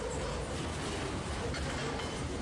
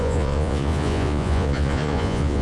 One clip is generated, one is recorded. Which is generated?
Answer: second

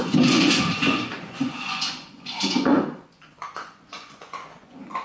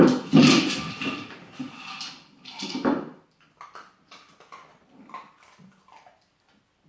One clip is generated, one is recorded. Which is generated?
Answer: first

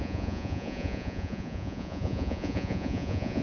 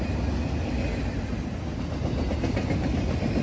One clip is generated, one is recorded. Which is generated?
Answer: first